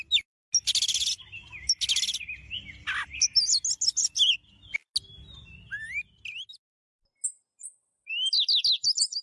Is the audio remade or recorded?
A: recorded